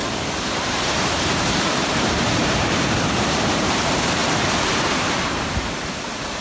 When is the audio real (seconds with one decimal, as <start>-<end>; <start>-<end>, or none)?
none